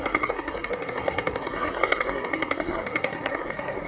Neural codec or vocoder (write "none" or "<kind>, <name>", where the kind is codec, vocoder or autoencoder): codec, SNAC